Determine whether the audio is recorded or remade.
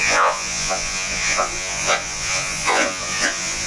remade